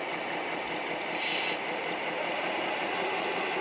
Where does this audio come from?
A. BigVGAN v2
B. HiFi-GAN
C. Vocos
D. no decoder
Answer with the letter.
D